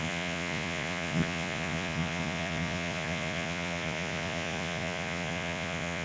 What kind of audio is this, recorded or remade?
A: remade